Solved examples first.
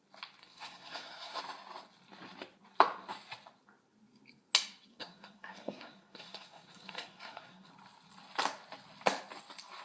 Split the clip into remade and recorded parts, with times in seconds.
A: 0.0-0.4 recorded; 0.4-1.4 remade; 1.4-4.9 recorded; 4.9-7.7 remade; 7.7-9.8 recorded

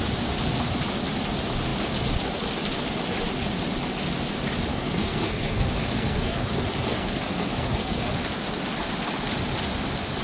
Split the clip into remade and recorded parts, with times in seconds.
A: 0.0-4.7 recorded; 4.7-6.4 remade; 6.4-6.9 recorded; 6.9-8.1 remade; 8.1-10.2 recorded

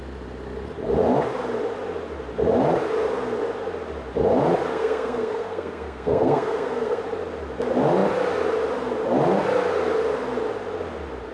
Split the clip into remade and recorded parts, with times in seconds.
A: 0.0-4.7 recorded; 4.7-7.0 remade; 7.0-11.3 recorded

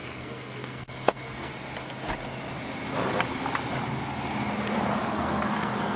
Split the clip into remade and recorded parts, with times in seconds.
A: 0.0-1.5 remade; 1.5-5.1 recorded; 5.1-6.0 remade

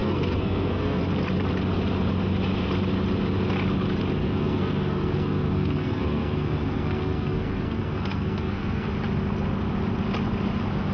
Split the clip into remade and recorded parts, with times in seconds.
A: 0.0-1.0 remade; 1.0-4.2 recorded; 4.2-8.9 remade; 8.9-10.9 recorded

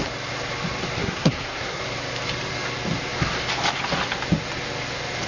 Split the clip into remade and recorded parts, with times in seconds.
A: 0.0-1.0 recorded; 1.0-1.8 remade; 1.8-5.3 recorded

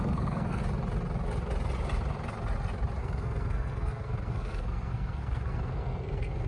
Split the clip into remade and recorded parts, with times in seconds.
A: 0.0-0.6 remade; 0.6-3.0 recorded; 3.0-6.5 remade